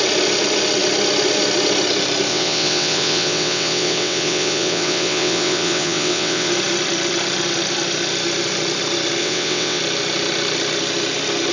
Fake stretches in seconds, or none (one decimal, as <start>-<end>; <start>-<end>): 2.3-6.5; 9.2-9.8